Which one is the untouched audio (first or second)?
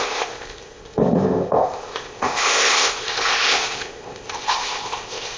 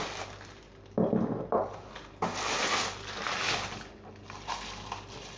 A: second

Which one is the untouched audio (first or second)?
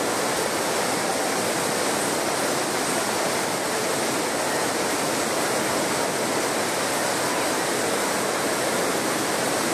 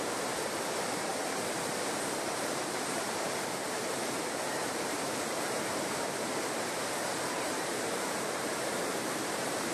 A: first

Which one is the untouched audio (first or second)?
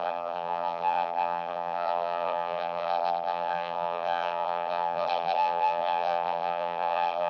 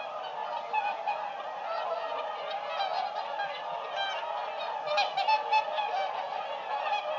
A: second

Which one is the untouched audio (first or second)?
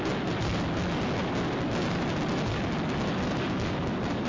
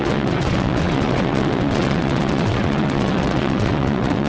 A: first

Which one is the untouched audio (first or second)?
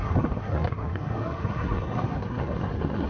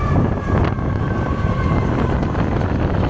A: second